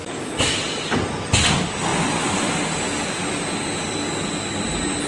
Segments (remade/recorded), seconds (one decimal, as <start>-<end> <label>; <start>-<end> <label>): 0.0-5.1 recorded